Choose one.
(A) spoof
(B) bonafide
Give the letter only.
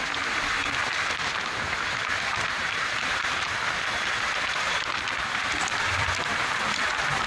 B